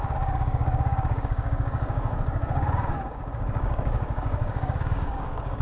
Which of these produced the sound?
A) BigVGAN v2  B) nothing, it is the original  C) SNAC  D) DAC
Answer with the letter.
D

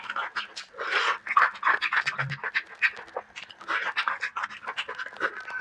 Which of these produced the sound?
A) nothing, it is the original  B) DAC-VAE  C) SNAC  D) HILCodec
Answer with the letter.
A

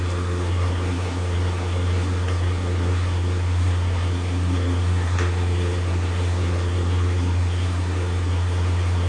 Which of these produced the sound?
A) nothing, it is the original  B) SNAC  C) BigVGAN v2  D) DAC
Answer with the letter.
B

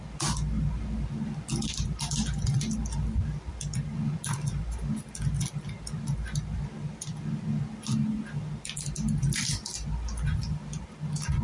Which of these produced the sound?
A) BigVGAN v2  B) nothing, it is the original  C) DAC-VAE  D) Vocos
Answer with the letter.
B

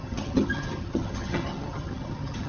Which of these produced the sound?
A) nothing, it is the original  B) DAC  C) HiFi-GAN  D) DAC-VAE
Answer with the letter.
C